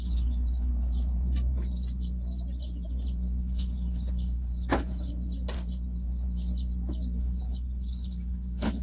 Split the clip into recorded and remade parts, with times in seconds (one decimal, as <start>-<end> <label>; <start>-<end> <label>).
0.0-0.7 remade; 0.7-3.4 recorded; 3.4-5.1 remade; 5.1-7.2 recorded; 7.2-8.8 remade